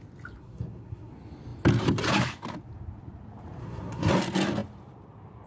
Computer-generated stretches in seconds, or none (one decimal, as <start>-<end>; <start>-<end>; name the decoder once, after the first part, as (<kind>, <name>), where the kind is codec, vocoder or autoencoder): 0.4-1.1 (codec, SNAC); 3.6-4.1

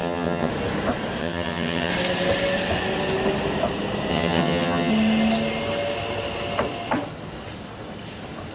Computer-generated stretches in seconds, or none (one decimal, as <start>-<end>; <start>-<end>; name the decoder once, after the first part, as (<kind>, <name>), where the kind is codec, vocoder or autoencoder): 0.0-0.5 (vocoder, HiFi-GAN); 1.2-1.9; 4.1-4.9

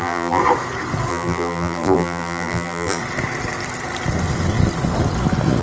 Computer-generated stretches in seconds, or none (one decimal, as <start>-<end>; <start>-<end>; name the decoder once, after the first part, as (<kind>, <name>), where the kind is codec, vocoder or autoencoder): 0.0-0.4 (vocoder, BigVGAN v2); 1.1-3.0

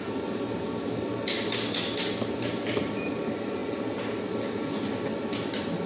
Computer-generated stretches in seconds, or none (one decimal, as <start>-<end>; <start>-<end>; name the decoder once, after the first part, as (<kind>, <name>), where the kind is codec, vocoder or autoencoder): none